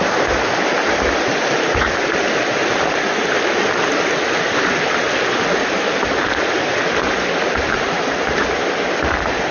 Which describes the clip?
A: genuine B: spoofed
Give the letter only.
A